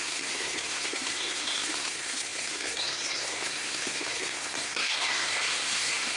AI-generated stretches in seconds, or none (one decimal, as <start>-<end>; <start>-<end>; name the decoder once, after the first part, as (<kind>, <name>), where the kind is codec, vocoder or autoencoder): 0.0-6.2 (codec, SNAC)